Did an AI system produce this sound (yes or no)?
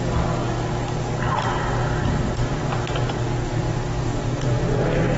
no